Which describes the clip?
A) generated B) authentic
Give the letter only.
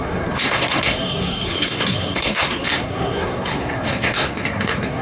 A